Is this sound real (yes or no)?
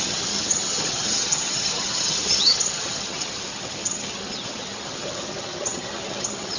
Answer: no